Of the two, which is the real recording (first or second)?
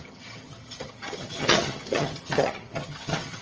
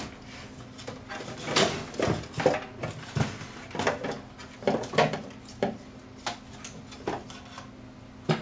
second